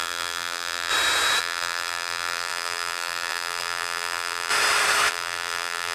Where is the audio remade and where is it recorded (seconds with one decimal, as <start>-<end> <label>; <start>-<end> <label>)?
0.0-0.9 remade; 0.9-1.4 recorded; 1.4-4.5 remade; 4.5-5.1 recorded; 5.1-5.9 remade